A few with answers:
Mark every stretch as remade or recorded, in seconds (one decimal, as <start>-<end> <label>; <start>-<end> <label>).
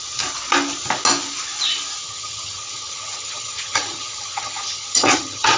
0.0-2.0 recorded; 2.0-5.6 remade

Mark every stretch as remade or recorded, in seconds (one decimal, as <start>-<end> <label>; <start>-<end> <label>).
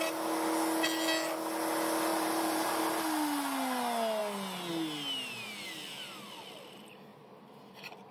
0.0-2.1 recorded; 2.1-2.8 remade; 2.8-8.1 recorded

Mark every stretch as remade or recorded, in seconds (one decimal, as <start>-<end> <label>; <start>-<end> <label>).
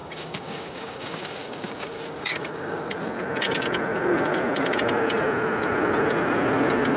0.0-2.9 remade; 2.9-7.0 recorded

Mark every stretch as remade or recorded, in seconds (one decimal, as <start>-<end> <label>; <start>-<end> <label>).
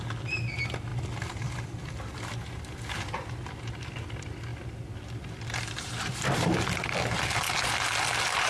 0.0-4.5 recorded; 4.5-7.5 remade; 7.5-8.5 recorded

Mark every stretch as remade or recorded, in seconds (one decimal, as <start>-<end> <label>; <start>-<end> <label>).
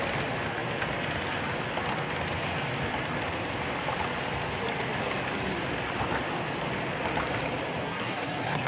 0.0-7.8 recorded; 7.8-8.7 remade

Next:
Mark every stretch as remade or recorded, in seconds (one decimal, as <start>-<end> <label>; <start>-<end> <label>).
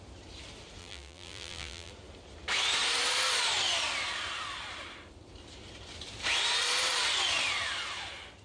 0.0-0.8 recorded; 0.8-1.9 remade; 1.9-8.4 recorded